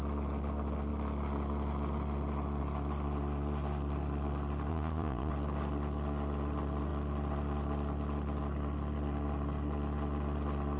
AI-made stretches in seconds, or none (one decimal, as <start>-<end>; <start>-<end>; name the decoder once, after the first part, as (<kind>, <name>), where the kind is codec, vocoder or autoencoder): 4.7-5.3 (vocoder, Vocos)